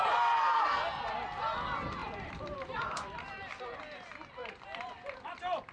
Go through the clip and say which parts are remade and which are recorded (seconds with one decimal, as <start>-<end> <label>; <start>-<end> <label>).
0.0-2.0 recorded; 2.0-3.8 remade; 3.8-4.4 recorded; 4.4-4.9 remade; 4.9-5.7 recorded